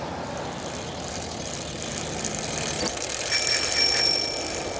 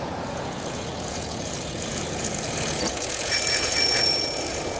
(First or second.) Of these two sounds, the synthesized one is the second